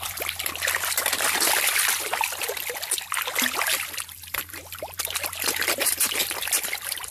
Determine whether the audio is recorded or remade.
remade